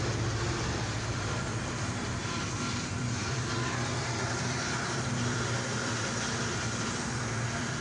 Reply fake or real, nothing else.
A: fake